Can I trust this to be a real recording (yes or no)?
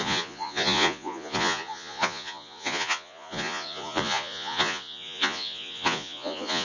no